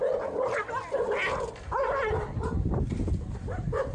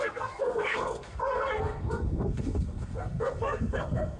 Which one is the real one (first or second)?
first